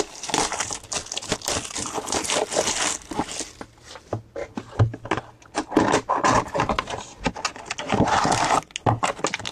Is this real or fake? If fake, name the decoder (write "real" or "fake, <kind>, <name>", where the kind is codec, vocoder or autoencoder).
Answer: real